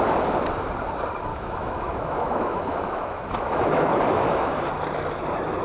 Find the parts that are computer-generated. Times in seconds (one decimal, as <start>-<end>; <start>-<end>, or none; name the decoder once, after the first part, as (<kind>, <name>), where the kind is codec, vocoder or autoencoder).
1.3-4.7 (autoencoder, DAC-VAE)